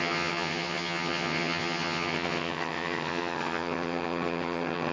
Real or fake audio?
fake